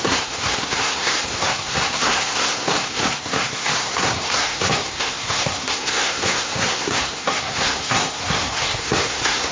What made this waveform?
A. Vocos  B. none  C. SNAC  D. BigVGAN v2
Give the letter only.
C